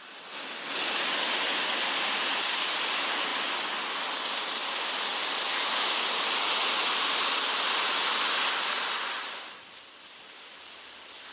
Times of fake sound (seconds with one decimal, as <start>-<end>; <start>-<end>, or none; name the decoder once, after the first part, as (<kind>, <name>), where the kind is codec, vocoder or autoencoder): none